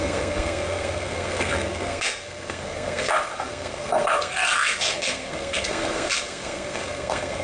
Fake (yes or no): yes